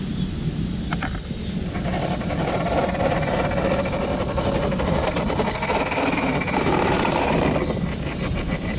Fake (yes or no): no